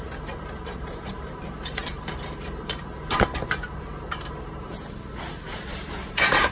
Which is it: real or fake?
fake